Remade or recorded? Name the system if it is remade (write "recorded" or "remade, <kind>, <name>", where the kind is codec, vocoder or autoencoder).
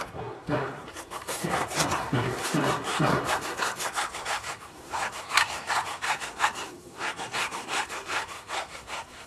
remade, codec, SNAC